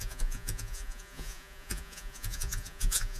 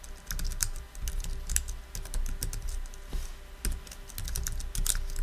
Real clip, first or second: second